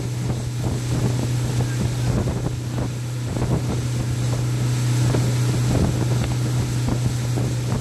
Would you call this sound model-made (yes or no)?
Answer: no